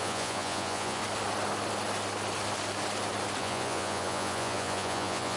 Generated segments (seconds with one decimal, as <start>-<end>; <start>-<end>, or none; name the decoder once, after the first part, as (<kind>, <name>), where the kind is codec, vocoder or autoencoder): 0.0-1.0 (vocoder, Vocos); 3.4-5.4